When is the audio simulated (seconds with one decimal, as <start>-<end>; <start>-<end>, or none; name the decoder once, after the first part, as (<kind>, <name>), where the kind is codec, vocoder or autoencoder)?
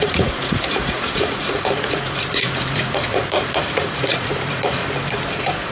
0.0-4.8 (vocoder, Vocos)